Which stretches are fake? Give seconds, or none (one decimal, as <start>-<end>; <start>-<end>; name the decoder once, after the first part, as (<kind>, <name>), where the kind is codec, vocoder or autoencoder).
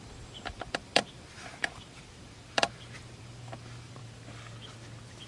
0.0-4.0 (vocoder, BigVGAN v2)